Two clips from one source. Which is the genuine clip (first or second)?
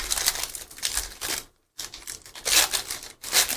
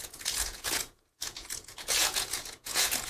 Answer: first